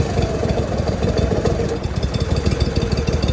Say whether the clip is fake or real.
real